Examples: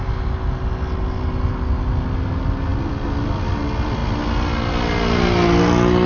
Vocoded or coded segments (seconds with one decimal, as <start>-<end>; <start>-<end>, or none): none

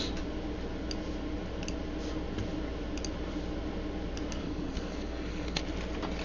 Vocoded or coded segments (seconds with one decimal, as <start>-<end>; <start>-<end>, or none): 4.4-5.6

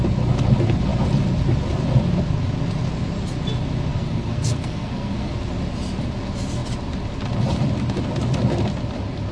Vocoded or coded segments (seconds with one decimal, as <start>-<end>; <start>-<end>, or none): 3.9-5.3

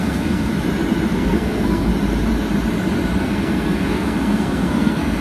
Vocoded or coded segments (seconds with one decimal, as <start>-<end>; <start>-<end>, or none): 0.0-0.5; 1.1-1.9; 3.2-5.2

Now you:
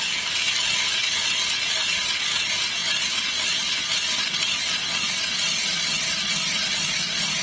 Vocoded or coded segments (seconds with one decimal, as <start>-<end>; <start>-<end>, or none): none

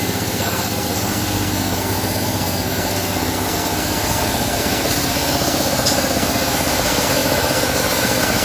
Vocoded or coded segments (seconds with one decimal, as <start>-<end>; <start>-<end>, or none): 0.0-8.4

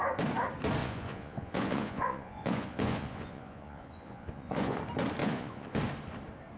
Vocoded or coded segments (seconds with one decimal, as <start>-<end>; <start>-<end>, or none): 0.8-4.8; 5.2-5.8

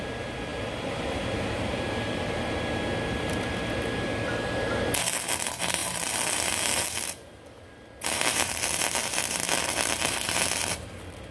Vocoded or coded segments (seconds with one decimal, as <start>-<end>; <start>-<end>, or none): 5.8-8.8